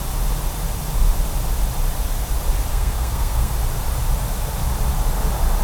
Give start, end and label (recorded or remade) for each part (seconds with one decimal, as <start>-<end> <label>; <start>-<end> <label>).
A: 0.0-2.7 recorded; 2.7-3.5 remade; 3.5-5.6 recorded